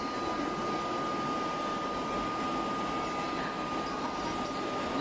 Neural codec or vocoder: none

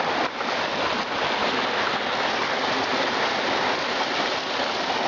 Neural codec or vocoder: none